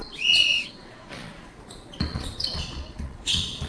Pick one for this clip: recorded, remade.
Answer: remade